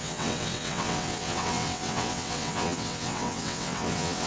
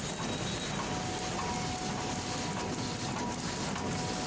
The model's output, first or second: first